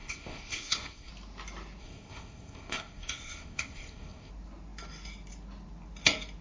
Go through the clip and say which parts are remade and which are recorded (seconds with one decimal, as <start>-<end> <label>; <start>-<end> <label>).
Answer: 0.0-1.1 remade; 1.1-1.8 recorded; 1.8-4.3 remade; 4.3-6.4 recorded